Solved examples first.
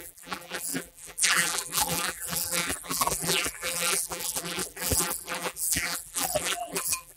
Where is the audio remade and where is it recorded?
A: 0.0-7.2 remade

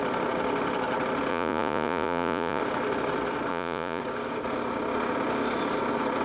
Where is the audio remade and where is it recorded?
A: 0.0-1.3 recorded; 1.3-2.6 remade; 2.6-3.5 recorded; 3.5-4.0 remade; 4.0-6.2 recorded

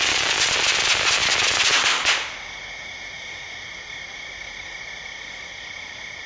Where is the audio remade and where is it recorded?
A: 0.0-6.3 recorded

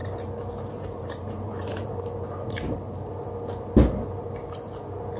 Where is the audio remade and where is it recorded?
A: 0.0-3.1 remade; 3.1-5.2 recorded

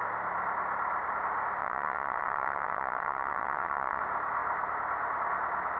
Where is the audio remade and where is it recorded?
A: 0.0-1.6 recorded; 1.6-4.0 remade; 4.0-5.8 recorded